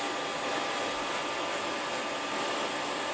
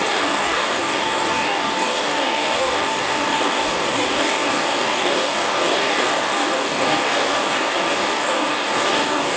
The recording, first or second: first